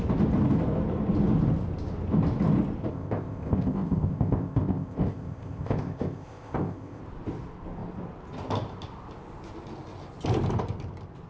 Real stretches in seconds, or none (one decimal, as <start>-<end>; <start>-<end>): 0.0-2.9; 7.0-11.3